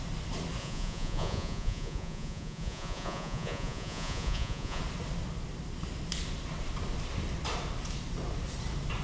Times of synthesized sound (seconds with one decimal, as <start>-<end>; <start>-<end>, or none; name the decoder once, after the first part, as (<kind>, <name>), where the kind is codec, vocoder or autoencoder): 0.6-4.8 (vocoder, Vocos)

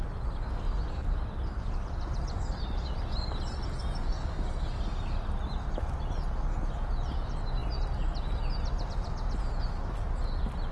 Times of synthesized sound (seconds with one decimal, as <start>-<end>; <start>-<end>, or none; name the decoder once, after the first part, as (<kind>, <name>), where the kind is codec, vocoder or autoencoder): none

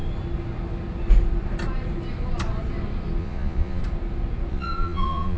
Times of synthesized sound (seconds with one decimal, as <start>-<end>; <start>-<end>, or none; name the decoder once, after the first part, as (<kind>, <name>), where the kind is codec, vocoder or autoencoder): 3.2-3.8 (vocoder, Vocos); 4.5-5.4

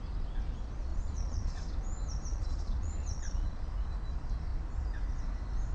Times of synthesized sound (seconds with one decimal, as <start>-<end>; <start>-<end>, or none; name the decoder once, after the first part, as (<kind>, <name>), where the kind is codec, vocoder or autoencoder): 0.9-1.6 (vocoder, Vocos); 2.3-3.6

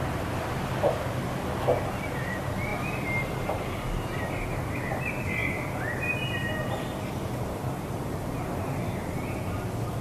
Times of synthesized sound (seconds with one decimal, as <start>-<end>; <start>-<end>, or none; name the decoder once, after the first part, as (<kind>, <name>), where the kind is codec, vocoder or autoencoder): none

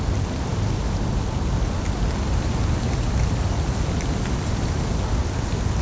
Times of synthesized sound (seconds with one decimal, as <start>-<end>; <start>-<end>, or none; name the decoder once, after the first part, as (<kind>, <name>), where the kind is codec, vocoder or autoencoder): none

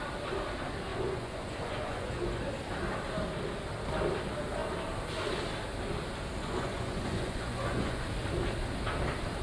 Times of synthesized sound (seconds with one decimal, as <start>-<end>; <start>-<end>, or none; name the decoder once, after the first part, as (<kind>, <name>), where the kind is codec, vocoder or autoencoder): 0.9-2.4 (vocoder, Vocos); 6.4-8.0